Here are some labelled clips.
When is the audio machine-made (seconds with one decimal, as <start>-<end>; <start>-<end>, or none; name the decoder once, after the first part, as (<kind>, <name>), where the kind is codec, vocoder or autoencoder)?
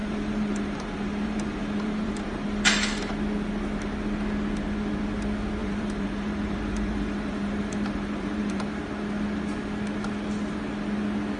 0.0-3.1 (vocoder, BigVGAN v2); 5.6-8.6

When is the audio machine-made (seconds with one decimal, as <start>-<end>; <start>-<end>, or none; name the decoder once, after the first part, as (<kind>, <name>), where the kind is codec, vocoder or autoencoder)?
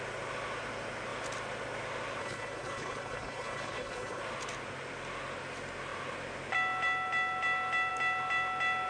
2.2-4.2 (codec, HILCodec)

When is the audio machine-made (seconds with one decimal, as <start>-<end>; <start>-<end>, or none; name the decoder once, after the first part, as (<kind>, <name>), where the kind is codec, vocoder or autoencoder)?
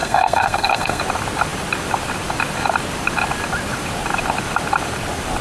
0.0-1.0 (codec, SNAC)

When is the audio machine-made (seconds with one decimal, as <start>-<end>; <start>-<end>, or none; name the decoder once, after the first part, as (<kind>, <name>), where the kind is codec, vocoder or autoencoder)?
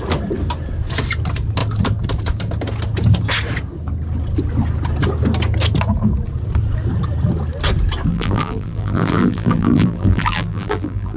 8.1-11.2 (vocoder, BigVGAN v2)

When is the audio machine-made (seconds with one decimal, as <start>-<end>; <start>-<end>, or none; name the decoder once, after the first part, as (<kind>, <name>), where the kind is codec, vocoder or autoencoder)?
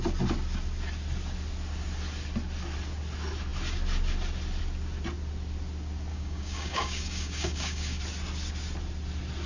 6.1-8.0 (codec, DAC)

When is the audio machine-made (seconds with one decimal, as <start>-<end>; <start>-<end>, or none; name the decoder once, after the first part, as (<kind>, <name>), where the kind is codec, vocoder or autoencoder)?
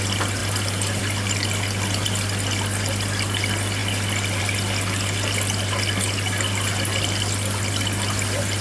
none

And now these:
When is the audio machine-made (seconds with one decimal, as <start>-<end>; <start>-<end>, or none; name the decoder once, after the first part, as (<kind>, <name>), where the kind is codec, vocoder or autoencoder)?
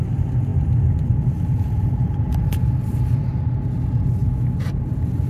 0.0-3.3 (vocoder, BigVGAN v2); 3.8-4.2; 4.8-5.3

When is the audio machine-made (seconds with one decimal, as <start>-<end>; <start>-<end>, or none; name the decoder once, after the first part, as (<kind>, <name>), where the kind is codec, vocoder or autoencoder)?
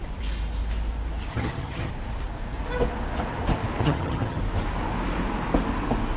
1.3-1.9 (vocoder, HiFi-GAN); 3.8-4.4